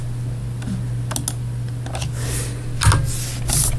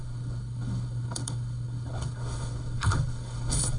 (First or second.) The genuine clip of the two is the first